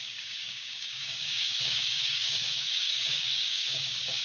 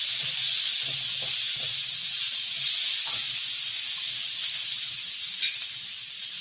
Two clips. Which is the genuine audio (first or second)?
second